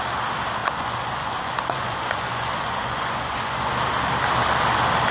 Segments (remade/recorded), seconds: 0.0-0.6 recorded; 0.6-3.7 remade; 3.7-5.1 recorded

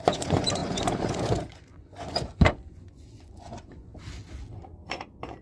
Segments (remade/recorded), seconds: 0.0-3.9 remade; 3.9-4.9 recorded; 4.9-5.4 remade

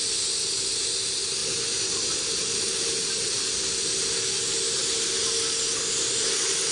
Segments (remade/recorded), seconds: 0.0-6.7 recorded